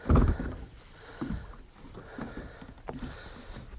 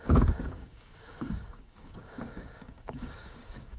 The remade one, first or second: second